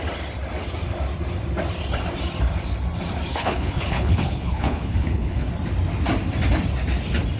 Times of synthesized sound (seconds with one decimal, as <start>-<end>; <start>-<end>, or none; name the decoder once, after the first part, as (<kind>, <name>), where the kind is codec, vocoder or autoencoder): 3.3-5.5 (codec, HILCodec)